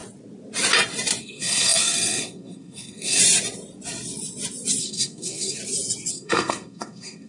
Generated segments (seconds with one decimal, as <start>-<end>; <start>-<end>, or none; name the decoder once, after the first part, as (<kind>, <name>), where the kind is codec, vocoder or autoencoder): 1.2-3.2 (codec, SNAC); 4.8-5.6; 6.1-7.3